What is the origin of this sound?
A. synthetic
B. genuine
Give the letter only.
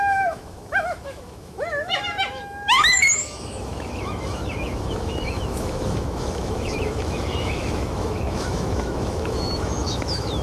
A